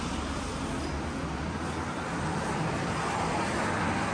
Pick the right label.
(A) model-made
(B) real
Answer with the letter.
B